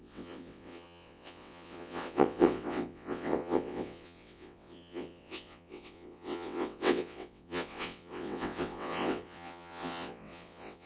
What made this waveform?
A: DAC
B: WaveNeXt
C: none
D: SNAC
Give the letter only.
B